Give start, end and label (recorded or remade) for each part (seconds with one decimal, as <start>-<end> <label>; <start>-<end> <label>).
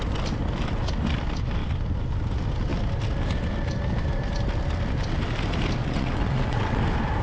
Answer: 0.0-5.8 recorded; 5.8-6.8 remade; 6.8-7.2 recorded